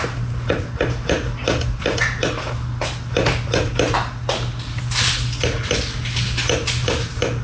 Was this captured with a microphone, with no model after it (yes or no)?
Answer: yes